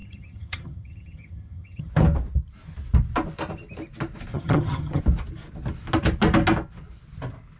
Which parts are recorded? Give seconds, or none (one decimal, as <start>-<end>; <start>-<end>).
1.9-4.3; 5.0-7.6